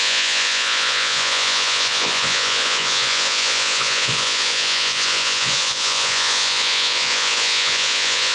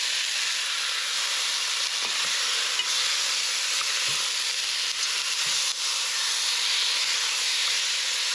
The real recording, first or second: second